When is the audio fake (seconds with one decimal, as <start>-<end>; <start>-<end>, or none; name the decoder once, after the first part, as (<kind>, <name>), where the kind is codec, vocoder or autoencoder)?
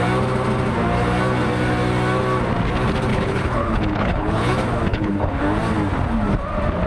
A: 3.1-4.5 (codec, HILCodec); 4.9-5.4